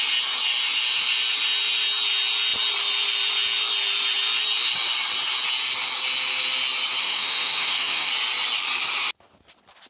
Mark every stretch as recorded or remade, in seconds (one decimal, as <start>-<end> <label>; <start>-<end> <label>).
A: 0.0-7.0 recorded; 7.0-8.1 remade; 8.1-9.9 recorded